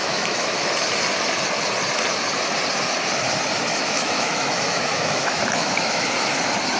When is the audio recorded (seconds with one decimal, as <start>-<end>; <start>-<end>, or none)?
0.7-3.7; 6.0-6.8